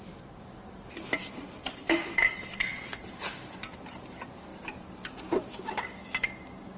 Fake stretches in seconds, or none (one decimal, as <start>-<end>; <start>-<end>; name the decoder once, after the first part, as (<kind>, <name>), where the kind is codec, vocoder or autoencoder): 0.0-4.5 (vocoder, BigVGAN v2)

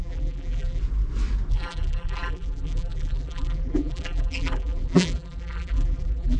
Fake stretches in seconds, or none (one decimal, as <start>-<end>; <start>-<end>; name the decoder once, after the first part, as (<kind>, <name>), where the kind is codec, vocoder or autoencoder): 0.0-0.8 (vocoder, BigVGAN v2); 1.5-6.4

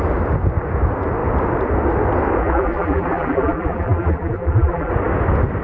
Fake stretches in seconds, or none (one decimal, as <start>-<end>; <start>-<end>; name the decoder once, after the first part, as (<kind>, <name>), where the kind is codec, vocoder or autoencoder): 2.4-4.9 (vocoder, BigVGAN v2)

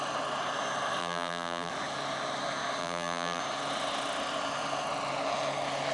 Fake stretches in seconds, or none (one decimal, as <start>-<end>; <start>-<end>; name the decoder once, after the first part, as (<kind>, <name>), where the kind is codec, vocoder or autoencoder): 1.0-1.7 (vocoder, BigVGAN v2); 2.8-3.4

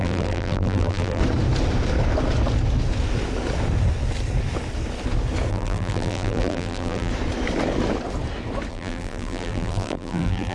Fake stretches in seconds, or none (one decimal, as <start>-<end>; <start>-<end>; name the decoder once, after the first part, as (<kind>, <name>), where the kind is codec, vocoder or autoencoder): 0.0-1.2 (vocoder, BigVGAN v2); 5.5-7.1; 8.7-10.5